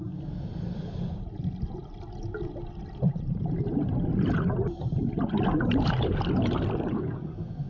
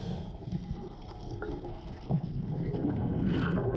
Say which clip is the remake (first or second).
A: second